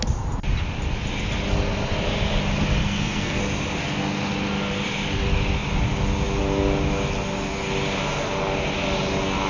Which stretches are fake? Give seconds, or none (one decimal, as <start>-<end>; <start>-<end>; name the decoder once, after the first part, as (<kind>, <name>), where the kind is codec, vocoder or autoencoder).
2.8-3.4 (codec, SNAC)